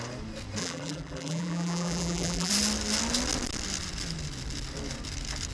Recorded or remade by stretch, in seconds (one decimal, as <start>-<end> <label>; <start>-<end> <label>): 0.0-0.6 recorded; 0.6-2.5 remade; 2.5-5.5 recorded